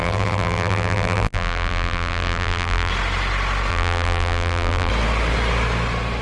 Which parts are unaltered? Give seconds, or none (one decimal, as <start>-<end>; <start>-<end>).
2.9-3.7; 4.9-6.2